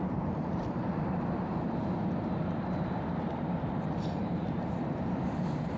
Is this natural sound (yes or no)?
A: no